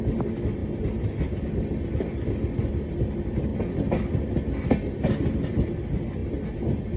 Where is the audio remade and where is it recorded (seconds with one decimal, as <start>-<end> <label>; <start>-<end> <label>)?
0.0-0.6 recorded; 0.6-2.2 remade; 2.2-7.0 recorded